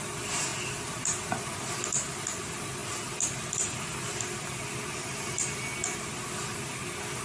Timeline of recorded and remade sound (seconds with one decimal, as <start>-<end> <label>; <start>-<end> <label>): 0.0-7.2 recorded